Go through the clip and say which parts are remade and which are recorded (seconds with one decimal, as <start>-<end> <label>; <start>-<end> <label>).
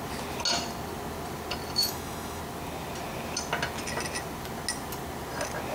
0.0-1.8 recorded; 1.8-2.4 remade; 2.4-5.7 recorded